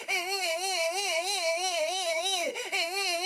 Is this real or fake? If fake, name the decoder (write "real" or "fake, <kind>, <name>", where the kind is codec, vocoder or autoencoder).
fake, autoencoder, DAC-VAE